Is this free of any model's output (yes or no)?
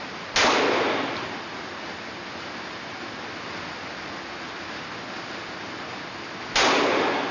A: yes